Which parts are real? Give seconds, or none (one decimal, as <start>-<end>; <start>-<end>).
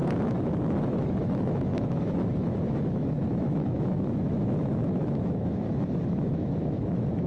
none